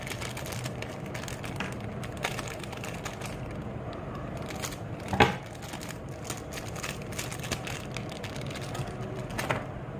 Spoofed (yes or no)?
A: no